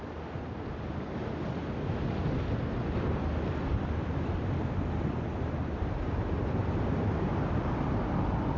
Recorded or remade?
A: recorded